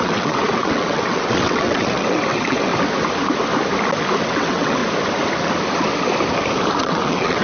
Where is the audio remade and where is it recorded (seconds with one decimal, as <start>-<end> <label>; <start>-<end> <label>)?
0.0-2.7 remade; 2.7-4.2 recorded; 4.2-4.8 remade; 4.8-6.8 recorded; 6.8-7.4 remade